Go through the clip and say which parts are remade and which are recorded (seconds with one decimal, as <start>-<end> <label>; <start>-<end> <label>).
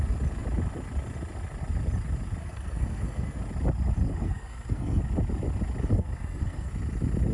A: 0.0-2.4 recorded; 2.4-3.4 remade; 3.4-4.1 recorded; 4.1-5.0 remade; 5.0-5.9 recorded; 5.9-6.7 remade; 6.7-7.3 recorded